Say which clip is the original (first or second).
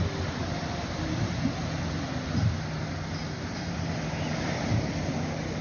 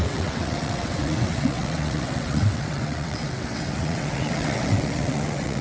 first